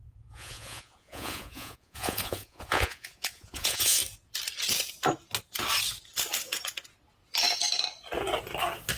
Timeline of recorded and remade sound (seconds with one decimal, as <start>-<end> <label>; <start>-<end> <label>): 0.0-4.0 remade; 4.0-9.0 recorded